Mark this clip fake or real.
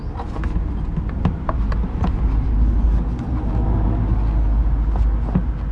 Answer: real